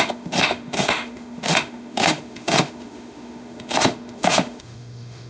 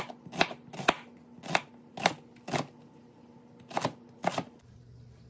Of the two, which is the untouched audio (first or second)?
second